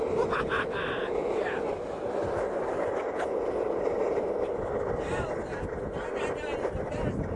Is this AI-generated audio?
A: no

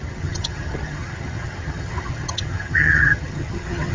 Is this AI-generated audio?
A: yes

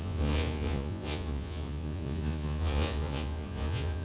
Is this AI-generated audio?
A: yes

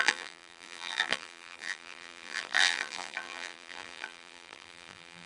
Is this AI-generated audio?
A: yes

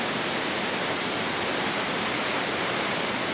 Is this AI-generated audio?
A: no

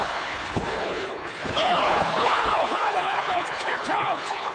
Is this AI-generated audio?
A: yes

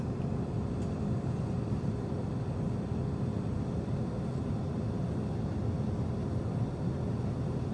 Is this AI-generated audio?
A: no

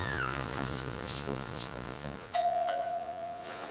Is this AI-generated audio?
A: yes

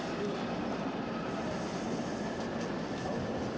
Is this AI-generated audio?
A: no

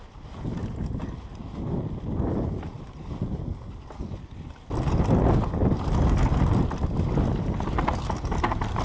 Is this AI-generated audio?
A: no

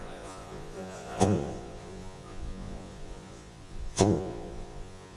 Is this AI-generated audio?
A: yes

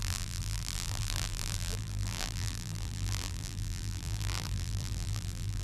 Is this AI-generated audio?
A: yes